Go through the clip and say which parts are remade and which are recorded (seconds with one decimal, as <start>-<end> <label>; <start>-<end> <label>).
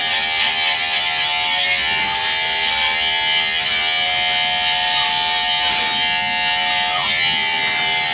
0.0-8.1 recorded